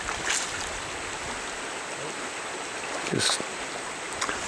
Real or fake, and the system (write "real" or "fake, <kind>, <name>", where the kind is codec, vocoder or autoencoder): real